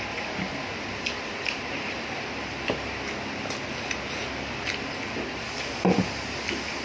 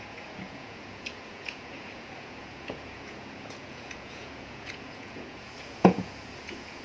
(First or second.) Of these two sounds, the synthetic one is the second